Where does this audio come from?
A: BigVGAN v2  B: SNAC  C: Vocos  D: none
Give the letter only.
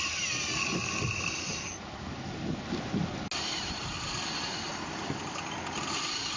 D